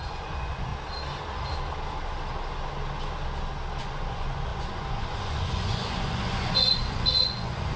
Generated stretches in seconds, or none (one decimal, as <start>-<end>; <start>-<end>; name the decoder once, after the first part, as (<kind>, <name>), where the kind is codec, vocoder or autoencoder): 0.0-0.7 (vocoder, Vocos); 3.8-7.8